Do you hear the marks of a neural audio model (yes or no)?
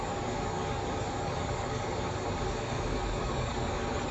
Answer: yes